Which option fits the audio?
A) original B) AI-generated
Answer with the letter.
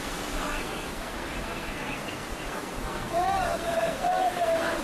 B